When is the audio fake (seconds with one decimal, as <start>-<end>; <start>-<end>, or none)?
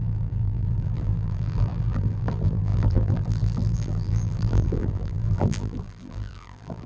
0.0-6.9